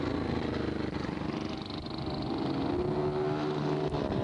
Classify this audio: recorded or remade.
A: recorded